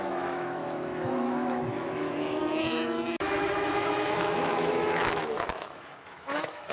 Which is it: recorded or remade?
remade